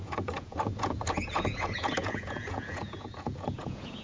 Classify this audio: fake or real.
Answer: fake